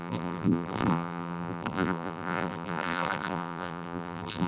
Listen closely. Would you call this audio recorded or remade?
remade